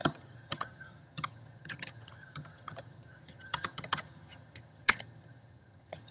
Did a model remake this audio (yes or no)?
yes